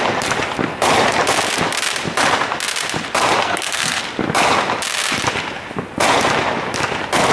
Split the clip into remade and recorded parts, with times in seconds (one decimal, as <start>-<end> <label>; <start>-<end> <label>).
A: 0.0-3.4 recorded; 3.4-4.0 remade; 4.0-7.3 recorded